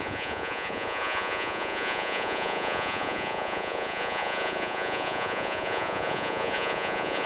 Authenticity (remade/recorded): remade